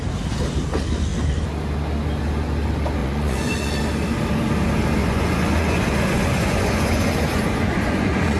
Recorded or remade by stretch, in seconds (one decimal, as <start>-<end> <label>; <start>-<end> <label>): 0.0-3.0 recorded; 3.0-3.8 remade; 3.8-5.0 recorded; 5.0-8.4 remade